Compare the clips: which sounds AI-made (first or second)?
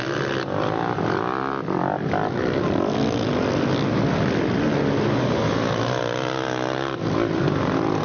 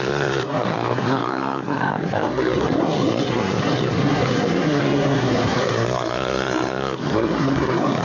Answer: second